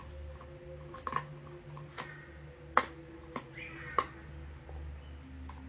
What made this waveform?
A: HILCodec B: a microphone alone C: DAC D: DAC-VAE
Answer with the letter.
B